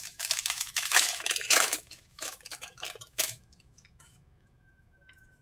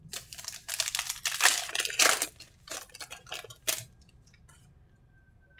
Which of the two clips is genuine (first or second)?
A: second